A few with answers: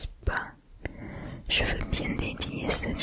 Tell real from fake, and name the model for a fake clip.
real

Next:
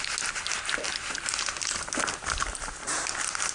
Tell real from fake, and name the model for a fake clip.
real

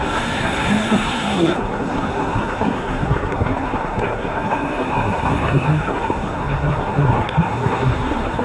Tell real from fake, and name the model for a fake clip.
fake, codec, SNAC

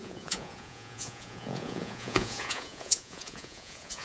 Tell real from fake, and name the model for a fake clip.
fake, vocoder, Vocos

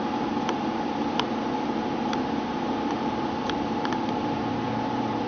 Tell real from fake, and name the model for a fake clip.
fake, vocoder, BigVGAN v2